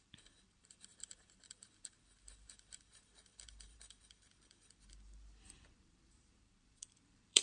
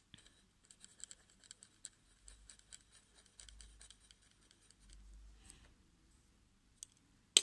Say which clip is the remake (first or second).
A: first